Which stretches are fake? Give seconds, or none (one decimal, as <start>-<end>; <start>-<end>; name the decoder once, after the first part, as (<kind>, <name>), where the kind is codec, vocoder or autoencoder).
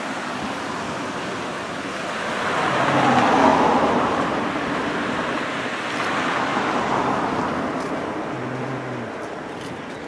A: 3.5-5.2 (vocoder, BigVGAN v2)